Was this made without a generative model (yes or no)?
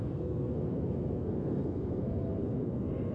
no